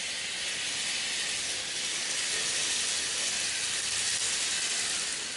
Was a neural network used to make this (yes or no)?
no